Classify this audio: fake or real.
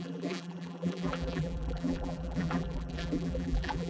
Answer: fake